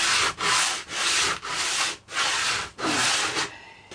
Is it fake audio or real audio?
real